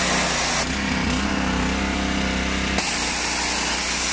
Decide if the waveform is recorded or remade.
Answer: recorded